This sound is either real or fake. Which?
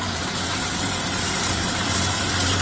fake